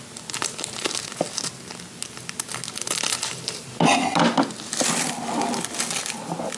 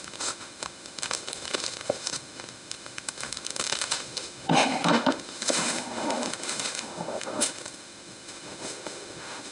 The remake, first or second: second